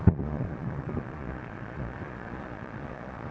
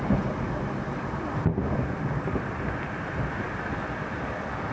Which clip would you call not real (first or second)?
first